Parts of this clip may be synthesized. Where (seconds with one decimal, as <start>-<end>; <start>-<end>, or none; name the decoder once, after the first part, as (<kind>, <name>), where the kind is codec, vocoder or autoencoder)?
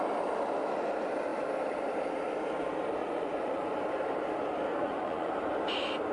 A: 3.0-3.8 (vocoder, Vocos); 4.7-5.3